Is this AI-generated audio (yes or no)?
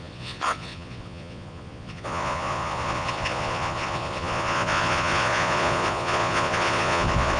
yes